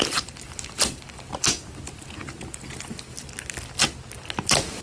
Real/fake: real